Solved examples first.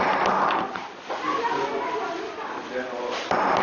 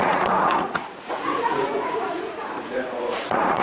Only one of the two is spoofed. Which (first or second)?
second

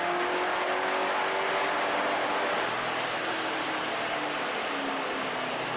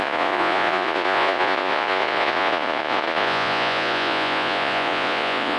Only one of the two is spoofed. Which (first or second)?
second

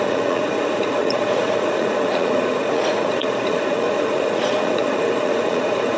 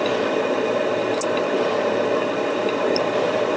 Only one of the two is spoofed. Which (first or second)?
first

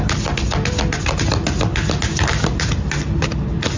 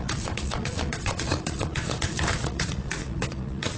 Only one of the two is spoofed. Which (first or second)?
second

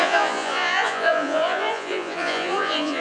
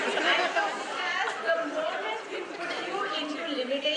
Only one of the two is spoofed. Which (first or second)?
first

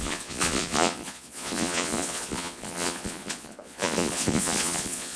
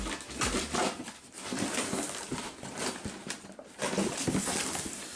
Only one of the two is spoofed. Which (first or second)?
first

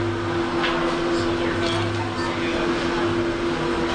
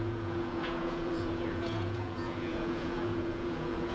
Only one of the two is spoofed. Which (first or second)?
second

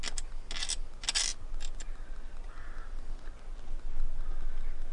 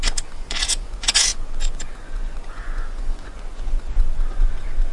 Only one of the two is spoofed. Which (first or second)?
second